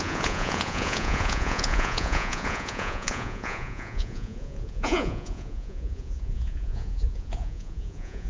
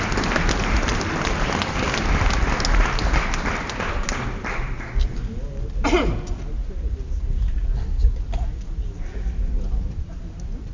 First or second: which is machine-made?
first